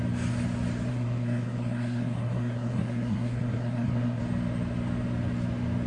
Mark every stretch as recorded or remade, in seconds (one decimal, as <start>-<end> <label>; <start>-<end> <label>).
0.0-0.9 recorded; 0.9-4.2 remade; 4.2-5.9 recorded